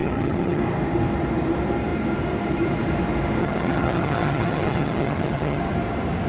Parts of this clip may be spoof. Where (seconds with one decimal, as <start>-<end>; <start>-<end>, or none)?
0.0-0.6; 3.4-5.6